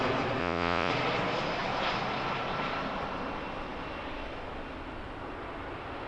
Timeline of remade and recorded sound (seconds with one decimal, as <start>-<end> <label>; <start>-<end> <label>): 0.0-0.4 recorded; 0.4-0.9 remade; 0.9-6.1 recorded